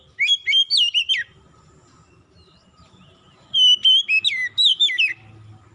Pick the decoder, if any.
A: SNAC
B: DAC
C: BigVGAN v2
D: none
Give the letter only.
D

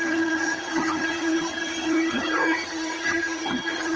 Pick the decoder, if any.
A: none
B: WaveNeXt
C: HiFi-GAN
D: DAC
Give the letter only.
C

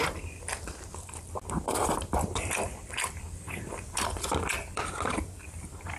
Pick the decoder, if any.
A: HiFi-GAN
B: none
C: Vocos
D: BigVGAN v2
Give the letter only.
D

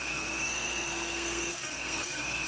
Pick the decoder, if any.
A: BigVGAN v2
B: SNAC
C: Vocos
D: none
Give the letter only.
B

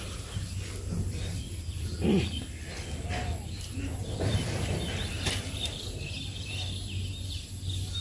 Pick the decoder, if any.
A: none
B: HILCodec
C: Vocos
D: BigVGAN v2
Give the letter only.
A